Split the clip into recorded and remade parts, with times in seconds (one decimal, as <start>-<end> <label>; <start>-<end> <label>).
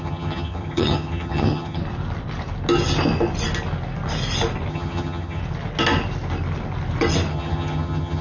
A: 0.0-1.8 remade; 1.8-4.7 recorded; 4.7-5.4 remade; 5.4-7.3 recorded; 7.3-8.2 remade